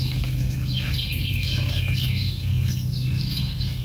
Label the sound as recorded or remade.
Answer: remade